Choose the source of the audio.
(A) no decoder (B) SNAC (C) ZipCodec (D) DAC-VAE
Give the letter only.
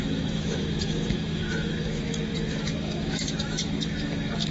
D